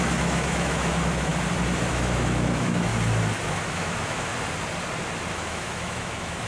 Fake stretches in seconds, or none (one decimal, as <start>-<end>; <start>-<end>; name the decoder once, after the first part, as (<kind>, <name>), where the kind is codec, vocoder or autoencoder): 0.0-1.3 (autoencoder, DAC-VAE); 1.9-2.9; 3.4-4.3; 5.3-6.5